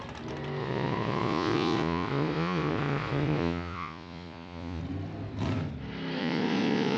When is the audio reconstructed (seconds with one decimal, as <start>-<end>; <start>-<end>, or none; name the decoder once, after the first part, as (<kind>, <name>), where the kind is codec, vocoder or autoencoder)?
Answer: 0.6-4.8 (vocoder, Vocos); 6.2-7.0